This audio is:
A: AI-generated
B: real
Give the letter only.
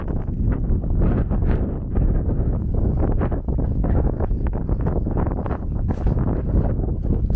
B